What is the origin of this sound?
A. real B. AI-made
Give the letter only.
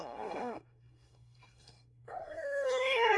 B